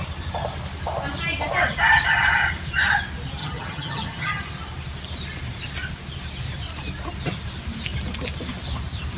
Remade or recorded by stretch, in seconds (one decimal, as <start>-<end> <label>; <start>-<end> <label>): 0.0-3.4 recorded; 3.4-4.4 remade; 4.4-9.2 recorded